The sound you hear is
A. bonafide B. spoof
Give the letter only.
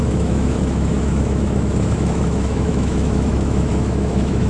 B